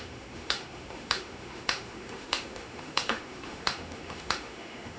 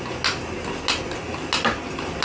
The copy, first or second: first